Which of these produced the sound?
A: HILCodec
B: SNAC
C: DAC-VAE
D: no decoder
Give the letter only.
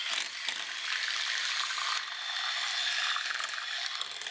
D